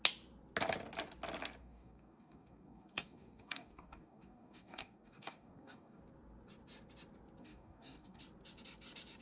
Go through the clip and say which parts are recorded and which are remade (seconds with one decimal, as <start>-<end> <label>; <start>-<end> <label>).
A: 0.0-1.6 recorded; 1.6-6.0 remade; 6.0-7.4 recorded; 7.4-8.2 remade; 8.2-9.2 recorded